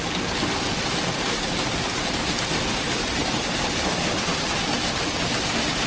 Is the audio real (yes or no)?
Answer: yes